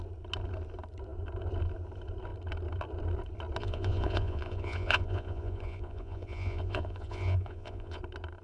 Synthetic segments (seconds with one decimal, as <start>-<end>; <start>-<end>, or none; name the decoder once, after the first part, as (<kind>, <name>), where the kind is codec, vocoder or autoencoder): 3.6-8.0 (vocoder, Vocos)